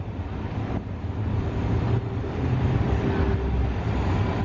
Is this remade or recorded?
recorded